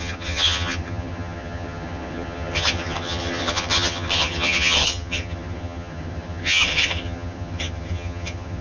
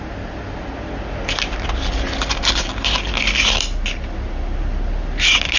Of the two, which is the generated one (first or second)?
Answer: first